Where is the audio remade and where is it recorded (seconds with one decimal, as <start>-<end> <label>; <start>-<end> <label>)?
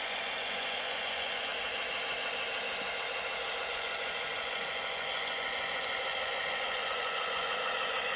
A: 0.0-1.5 remade; 1.5-3.6 recorded; 3.6-8.2 remade